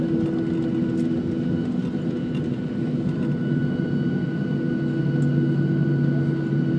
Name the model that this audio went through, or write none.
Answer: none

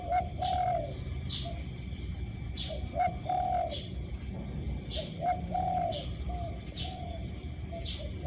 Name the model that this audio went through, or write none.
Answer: vocoder, BigVGAN v2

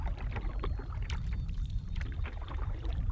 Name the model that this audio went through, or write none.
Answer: vocoder, BigVGAN v2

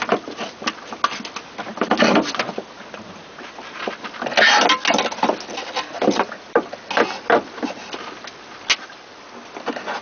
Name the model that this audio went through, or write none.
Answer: none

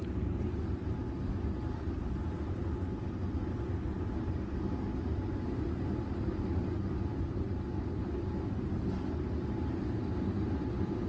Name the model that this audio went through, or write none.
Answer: none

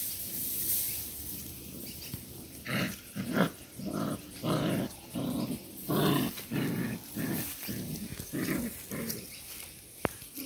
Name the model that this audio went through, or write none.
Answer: vocoder, BigVGAN v2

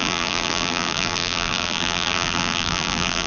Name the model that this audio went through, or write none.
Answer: vocoder, BigVGAN v2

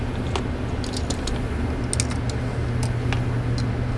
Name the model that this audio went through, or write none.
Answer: none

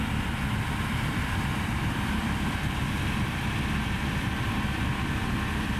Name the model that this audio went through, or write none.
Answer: vocoder, BigVGAN v2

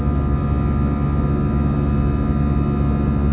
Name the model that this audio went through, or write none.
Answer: none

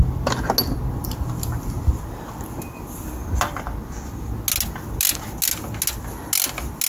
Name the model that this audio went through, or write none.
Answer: none